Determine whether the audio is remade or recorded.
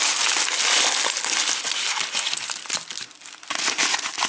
recorded